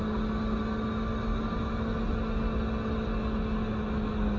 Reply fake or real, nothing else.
real